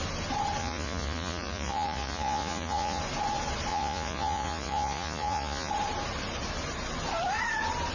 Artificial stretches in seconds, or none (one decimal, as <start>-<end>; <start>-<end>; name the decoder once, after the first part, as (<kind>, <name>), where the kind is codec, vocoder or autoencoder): 0.6-3.0 (vocoder, Vocos); 3.7-5.7